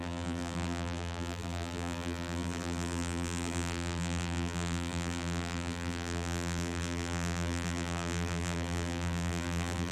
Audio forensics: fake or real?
fake